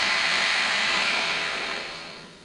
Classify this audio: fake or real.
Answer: fake